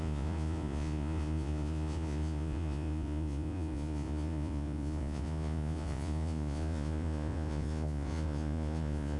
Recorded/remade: remade